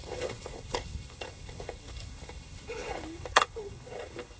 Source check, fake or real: fake